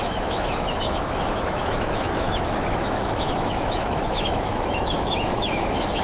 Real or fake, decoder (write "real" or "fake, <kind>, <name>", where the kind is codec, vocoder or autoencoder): fake, autoencoder, DAC-VAE